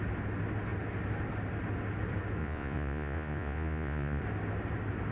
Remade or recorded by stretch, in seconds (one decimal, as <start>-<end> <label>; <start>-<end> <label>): 0.0-2.4 recorded; 2.4-4.2 remade; 4.2-5.1 recorded